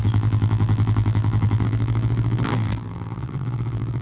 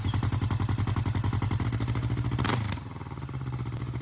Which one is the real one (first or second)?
second